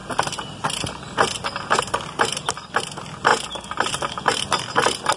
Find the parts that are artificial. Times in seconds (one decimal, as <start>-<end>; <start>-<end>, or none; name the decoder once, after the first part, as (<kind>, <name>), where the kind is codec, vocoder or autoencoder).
2.3-2.9 (vocoder, BigVGAN v2); 3.3-3.9